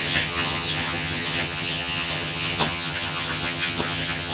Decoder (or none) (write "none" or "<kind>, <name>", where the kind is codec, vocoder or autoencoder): vocoder, HiFi-GAN